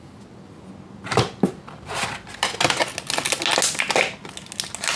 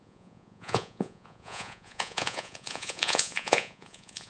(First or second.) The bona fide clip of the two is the first